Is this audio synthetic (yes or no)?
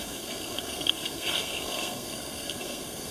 yes